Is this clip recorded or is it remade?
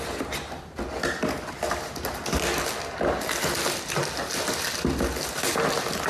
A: recorded